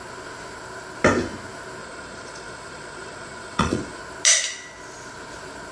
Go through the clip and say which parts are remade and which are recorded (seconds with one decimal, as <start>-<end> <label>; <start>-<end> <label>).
0.0-1.8 recorded; 1.8-4.0 remade; 4.0-5.7 recorded